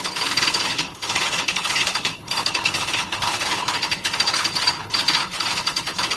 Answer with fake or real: fake